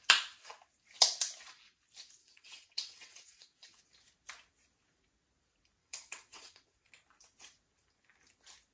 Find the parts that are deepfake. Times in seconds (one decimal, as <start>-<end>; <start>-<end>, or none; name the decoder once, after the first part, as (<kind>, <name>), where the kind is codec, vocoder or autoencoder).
2.2-3.8 (vocoder, WaveNeXt); 5.8-6.9

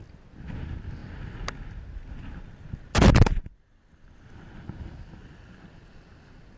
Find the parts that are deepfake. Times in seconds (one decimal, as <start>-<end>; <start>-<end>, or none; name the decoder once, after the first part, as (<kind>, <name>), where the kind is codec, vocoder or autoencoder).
none

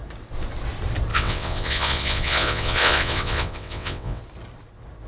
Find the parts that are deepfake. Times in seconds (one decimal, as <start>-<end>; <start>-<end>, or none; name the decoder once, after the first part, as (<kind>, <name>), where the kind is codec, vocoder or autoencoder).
1.1-4.2 (vocoder, WaveNeXt)

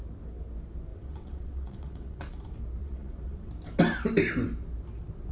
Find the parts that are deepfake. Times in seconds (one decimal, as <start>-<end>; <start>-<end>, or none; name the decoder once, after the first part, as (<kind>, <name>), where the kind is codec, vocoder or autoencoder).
0.9-2.4 (vocoder, WaveNeXt); 2.8-3.5

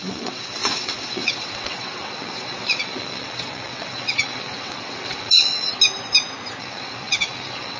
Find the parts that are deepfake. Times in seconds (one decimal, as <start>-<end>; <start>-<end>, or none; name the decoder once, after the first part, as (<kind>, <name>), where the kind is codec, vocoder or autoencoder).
0.0-5.7 (vocoder, WaveNeXt); 6.6-7.8

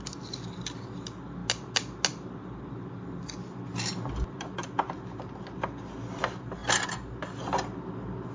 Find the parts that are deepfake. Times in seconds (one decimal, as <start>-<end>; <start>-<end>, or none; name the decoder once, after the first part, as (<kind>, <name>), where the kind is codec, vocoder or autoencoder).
none

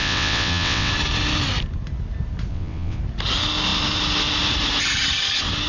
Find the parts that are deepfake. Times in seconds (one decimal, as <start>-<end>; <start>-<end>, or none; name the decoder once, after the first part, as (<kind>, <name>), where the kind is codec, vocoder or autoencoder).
0.0-0.9 (vocoder, WaveNeXt); 2.5-3.0

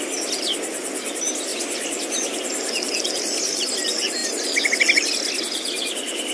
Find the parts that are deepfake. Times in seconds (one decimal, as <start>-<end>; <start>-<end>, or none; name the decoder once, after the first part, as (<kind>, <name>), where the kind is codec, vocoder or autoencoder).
none